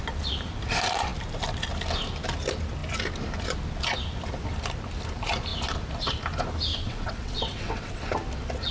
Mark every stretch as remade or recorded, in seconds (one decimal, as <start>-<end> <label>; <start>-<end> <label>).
0.0-6.7 recorded; 6.7-8.1 remade; 8.1-8.7 recorded